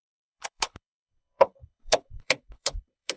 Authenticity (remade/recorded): remade